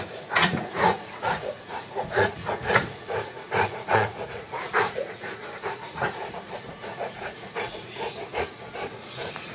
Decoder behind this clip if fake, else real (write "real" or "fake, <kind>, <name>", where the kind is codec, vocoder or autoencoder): fake, vocoder, Vocos